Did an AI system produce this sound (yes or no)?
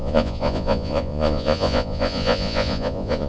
yes